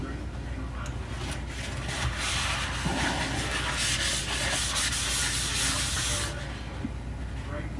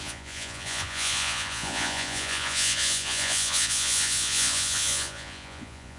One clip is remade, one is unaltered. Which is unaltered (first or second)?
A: first